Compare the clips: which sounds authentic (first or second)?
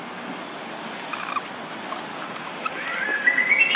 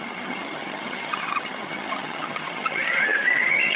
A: first